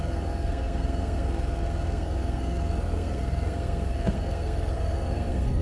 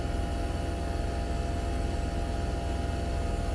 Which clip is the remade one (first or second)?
first